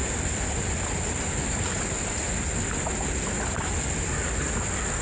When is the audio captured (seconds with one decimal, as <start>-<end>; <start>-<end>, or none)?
0.0-5.0